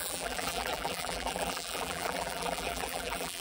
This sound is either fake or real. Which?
fake